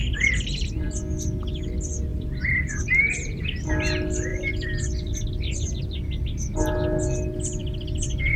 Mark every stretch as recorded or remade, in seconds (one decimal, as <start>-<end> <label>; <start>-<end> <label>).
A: 0.0-0.9 remade; 0.9-2.1 recorded; 2.1-2.7 remade; 2.7-4.3 recorded; 4.3-5.1 remade; 5.1-7.6 recorded; 7.6-8.4 remade